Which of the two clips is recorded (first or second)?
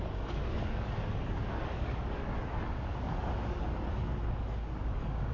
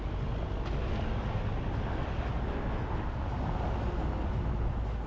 second